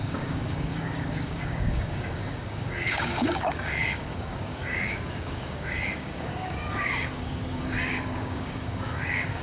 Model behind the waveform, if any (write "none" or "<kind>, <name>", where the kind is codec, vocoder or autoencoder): codec, DAC